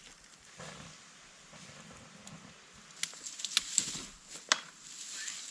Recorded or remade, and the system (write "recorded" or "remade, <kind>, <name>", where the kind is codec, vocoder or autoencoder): recorded